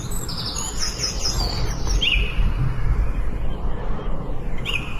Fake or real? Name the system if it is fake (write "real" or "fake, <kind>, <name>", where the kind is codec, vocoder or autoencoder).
real